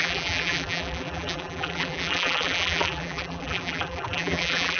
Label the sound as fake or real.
fake